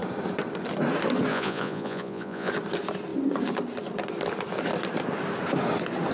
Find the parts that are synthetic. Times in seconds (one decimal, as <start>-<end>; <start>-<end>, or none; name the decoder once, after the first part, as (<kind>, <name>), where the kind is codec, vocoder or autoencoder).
1.3-2.5 (vocoder, Vocos)